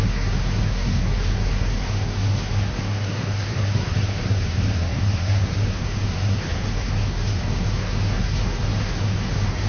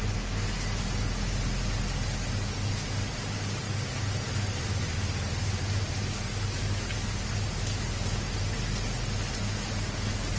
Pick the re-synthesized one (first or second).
first